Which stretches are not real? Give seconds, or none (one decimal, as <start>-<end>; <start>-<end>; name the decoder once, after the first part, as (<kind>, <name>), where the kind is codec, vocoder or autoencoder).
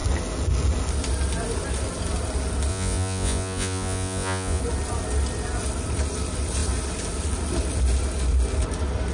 2.7-4.6 (vocoder, Vocos)